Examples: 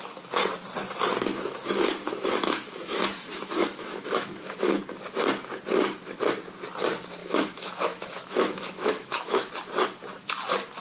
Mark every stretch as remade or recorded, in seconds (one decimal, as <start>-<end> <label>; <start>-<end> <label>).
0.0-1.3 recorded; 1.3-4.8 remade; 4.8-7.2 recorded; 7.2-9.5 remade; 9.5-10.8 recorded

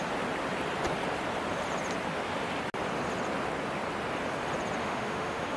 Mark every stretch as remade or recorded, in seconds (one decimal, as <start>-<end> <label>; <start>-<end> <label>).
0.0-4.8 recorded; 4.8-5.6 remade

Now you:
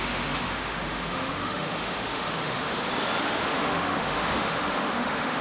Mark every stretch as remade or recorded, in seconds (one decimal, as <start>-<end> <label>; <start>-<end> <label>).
0.0-2.7 remade; 2.7-3.2 recorded; 3.2-5.4 remade